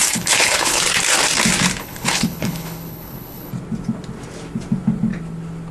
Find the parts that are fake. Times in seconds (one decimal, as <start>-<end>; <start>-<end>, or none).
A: 0.0-0.8; 1.8-3.5